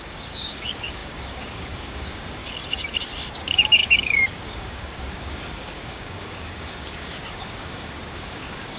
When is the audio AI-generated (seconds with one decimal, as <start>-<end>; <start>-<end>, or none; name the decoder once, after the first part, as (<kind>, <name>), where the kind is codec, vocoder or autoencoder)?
0.0-2.4 (codec, DAC); 3.3-8.8